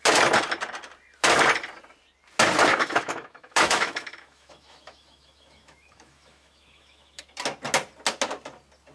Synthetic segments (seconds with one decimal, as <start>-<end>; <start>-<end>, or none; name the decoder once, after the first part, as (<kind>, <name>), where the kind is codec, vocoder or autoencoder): 2.7-7.2 (autoencoder, DAC-VAE)